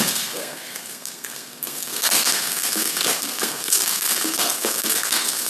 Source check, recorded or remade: remade